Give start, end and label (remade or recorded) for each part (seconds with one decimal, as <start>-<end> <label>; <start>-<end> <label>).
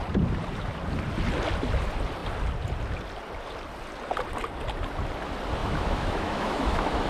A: 0.0-5.6 recorded; 5.6-7.1 remade